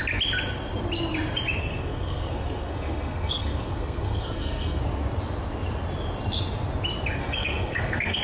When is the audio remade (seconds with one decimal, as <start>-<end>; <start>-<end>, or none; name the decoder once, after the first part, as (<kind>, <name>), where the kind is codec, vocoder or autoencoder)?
1.6-4.8 (codec, SNAC); 7.2-8.2